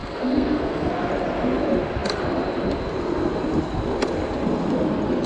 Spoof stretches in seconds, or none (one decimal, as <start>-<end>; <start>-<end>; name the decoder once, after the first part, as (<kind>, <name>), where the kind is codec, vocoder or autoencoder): 0.0-0.9 (codec, SNAC)